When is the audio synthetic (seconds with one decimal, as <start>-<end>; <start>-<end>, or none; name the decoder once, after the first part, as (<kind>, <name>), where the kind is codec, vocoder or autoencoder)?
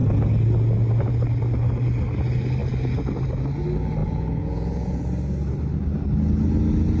4.0-5.0 (vocoder, Vocos)